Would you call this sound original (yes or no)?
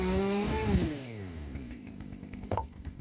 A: no